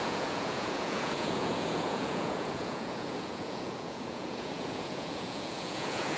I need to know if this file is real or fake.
fake